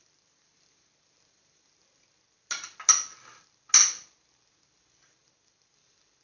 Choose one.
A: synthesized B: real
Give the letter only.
B